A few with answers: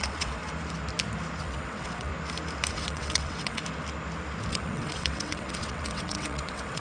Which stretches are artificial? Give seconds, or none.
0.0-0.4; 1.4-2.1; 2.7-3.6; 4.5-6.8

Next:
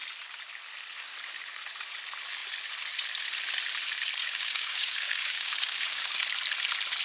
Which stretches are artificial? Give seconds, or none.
4.2-6.2

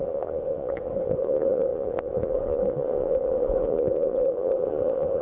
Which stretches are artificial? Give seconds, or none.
0.0-5.2